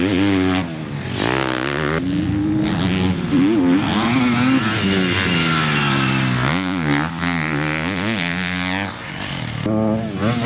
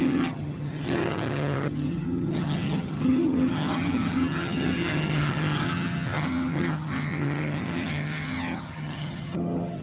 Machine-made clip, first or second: second